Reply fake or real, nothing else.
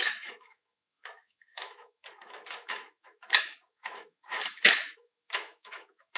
fake